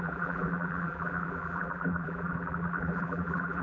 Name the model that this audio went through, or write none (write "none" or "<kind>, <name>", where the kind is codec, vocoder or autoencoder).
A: vocoder, BigVGAN v2